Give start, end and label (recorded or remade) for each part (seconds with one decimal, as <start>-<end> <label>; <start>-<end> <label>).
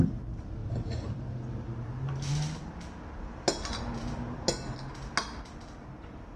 0.0-0.6 recorded; 0.6-2.3 remade; 2.3-6.4 recorded